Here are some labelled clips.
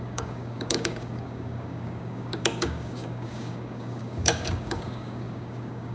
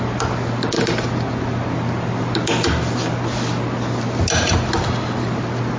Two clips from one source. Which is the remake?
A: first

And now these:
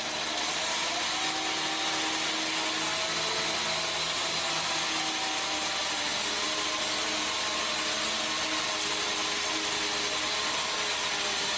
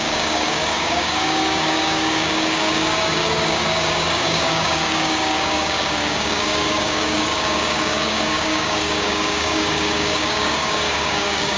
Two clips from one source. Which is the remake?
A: second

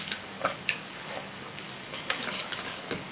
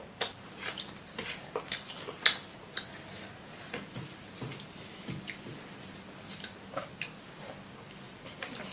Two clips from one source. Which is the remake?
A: first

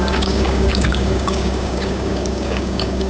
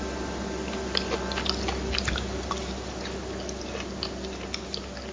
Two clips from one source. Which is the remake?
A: first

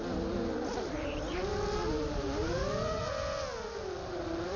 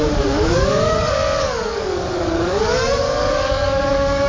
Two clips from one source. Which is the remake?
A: second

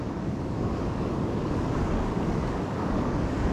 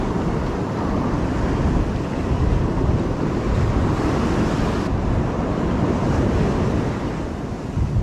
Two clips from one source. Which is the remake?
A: first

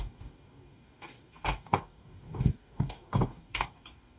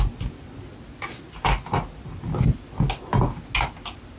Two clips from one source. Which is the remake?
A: first